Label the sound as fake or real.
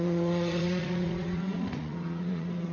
fake